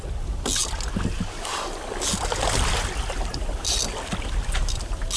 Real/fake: real